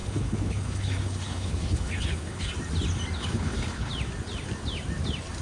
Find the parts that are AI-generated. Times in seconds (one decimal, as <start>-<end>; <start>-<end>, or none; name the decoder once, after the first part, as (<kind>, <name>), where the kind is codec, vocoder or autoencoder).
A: 0.0-2.5 (codec, HILCodec); 3.2-3.9